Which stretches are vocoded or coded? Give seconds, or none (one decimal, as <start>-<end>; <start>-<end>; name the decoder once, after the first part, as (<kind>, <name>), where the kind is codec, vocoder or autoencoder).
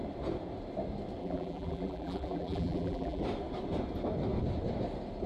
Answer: 1.2-3.2 (vocoder, BigVGAN v2)